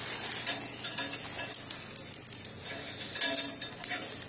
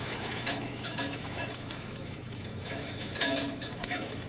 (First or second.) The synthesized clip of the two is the second